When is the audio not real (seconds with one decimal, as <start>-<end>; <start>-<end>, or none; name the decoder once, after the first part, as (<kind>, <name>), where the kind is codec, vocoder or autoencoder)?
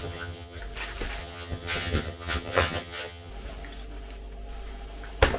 0.0-0.6 (vocoder, HiFi-GAN); 1.2-3.3